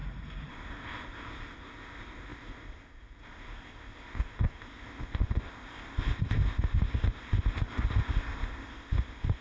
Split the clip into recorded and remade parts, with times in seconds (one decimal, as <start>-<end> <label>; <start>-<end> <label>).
0.0-0.5 recorded; 0.5-9.4 remade